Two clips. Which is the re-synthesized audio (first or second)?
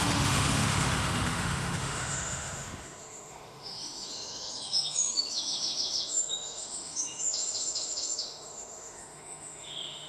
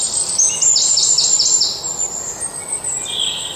first